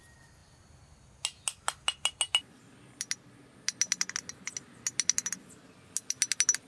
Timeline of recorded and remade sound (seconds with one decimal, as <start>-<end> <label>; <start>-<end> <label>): 0.0-6.7 recorded